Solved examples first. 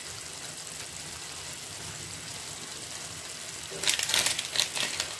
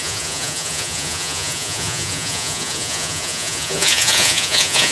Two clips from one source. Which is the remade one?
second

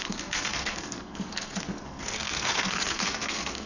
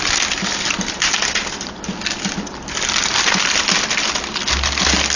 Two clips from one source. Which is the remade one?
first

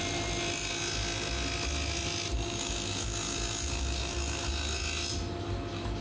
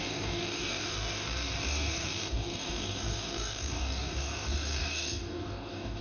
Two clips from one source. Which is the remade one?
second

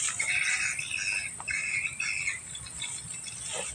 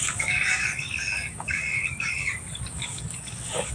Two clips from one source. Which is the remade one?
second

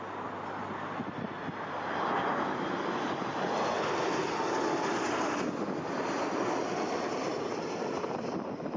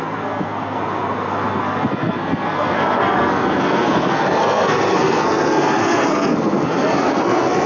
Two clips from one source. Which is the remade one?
second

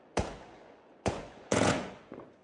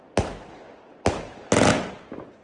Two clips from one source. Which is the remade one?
first